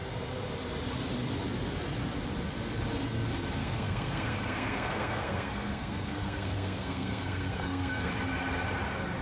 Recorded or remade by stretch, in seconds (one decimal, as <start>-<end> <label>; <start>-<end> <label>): 0.0-3.6 recorded; 3.6-8.1 remade; 8.1-9.2 recorded